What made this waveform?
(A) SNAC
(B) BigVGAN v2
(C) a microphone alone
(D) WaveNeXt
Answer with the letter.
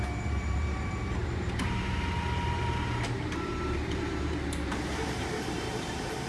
B